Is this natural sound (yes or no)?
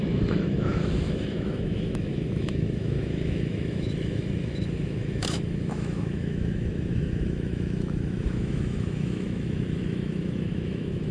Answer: no